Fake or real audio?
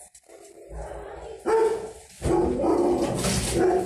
real